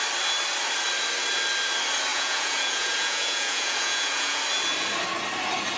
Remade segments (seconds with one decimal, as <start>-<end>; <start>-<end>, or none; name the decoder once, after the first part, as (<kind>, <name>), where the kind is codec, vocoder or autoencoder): 2.1-4.4 (vocoder, Vocos)